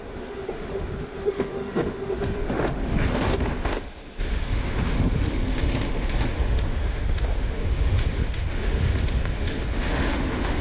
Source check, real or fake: fake